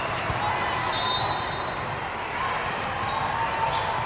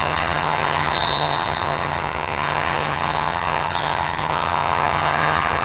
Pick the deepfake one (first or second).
second